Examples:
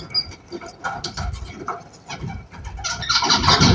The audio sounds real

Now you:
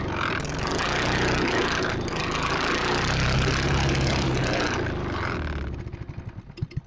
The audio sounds real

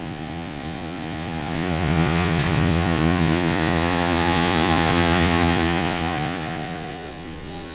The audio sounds fake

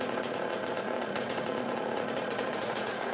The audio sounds fake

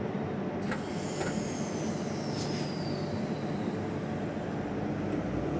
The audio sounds real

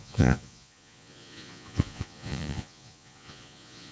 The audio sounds fake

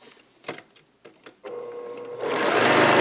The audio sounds real